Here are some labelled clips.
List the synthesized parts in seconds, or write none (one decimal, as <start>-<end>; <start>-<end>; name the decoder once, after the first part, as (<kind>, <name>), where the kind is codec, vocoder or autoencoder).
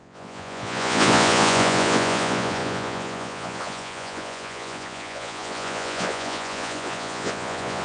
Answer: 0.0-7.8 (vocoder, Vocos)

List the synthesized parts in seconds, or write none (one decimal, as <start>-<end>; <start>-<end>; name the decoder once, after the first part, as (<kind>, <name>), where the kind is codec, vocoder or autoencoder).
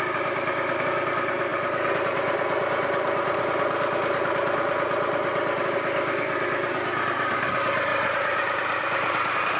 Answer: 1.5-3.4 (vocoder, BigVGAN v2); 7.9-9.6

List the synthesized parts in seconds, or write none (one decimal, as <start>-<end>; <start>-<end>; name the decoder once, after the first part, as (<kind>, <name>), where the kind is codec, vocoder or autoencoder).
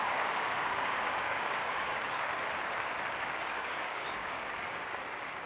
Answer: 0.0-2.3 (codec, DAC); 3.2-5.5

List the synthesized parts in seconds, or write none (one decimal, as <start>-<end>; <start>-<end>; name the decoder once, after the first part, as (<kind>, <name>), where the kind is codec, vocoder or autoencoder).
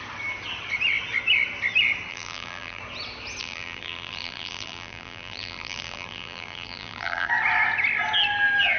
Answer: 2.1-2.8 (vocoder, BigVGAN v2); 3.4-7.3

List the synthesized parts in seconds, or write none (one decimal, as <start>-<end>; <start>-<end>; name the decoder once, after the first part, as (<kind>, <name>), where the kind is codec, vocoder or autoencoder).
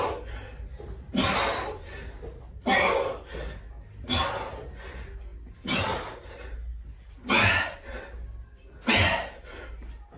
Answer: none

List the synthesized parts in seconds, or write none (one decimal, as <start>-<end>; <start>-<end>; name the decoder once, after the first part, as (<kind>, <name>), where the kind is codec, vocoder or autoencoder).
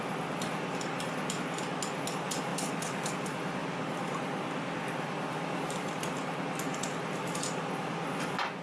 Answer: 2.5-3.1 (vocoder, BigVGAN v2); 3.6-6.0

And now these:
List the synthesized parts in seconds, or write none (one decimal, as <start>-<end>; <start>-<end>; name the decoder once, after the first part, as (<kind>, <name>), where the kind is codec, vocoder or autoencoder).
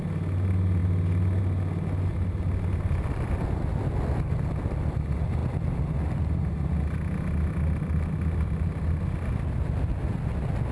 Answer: none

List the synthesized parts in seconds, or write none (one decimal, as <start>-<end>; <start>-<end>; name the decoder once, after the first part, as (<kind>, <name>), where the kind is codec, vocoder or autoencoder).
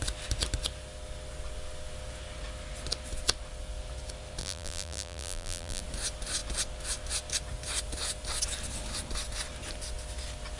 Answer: 4.4-5.8 (vocoder, BigVGAN v2)